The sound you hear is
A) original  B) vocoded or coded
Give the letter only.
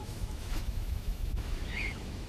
B